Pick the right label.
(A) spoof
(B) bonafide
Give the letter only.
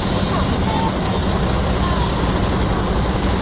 B